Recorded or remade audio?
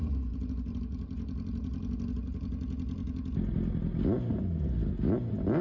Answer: recorded